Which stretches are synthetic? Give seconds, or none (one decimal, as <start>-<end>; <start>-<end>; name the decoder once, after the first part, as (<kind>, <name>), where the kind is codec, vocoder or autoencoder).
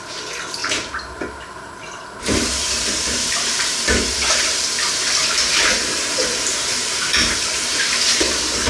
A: 0.6-1.3 (vocoder, BigVGAN v2); 2.6-4.6; 5.2-8.7